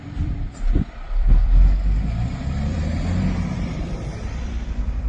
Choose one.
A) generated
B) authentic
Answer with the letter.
A